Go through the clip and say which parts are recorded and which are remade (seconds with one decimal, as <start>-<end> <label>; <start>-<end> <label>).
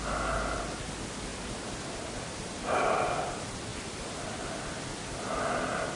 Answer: 0.0-6.0 recorded